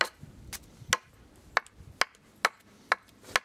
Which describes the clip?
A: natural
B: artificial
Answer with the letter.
A